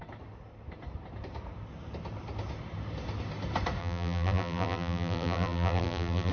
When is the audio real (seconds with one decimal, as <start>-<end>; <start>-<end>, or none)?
0.0-3.8